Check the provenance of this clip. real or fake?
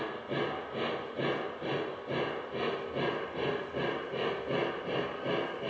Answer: real